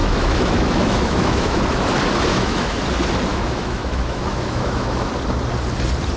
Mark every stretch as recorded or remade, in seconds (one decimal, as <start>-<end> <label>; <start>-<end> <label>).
0.0-1.6 remade; 1.6-2.3 recorded; 2.3-2.8 remade; 2.8-3.3 recorded; 3.3-5.1 remade; 5.1-6.2 recorded